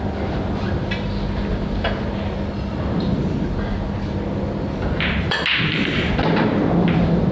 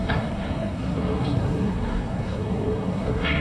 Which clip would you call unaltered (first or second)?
first